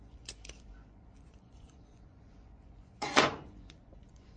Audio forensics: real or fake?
fake